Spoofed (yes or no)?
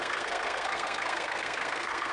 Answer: yes